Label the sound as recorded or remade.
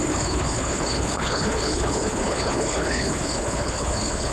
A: remade